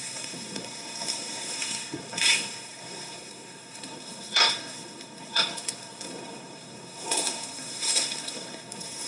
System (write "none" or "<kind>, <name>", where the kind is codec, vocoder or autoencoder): codec, SNAC